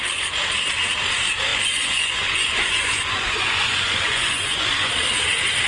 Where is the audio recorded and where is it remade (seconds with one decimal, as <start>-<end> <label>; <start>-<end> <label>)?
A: 0.0-1.5 recorded; 1.5-4.9 remade; 4.9-5.7 recorded